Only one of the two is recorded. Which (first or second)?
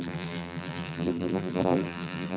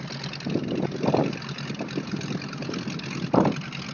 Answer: second